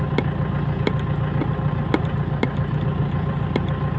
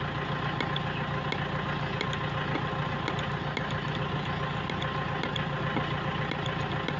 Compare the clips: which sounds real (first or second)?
second